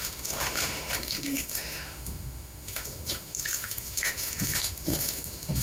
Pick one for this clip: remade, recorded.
remade